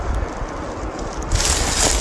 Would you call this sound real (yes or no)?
yes